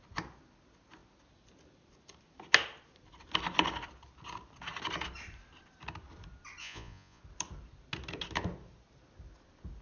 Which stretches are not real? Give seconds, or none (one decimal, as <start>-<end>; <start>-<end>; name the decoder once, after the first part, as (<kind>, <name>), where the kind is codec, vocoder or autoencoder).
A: 6.6-7.2 (vocoder, Vocos)